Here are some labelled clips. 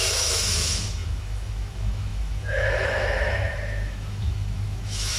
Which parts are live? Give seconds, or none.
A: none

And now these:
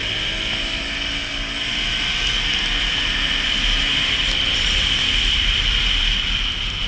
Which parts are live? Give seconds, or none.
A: 0.0-6.9